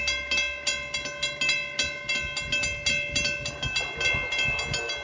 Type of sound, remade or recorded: recorded